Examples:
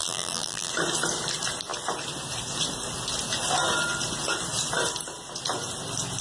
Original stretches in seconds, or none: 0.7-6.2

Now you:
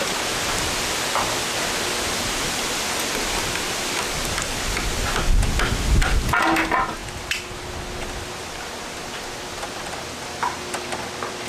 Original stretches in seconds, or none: 0.0-11.5